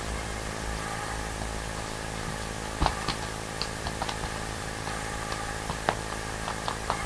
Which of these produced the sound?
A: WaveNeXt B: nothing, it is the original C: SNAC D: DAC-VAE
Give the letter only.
B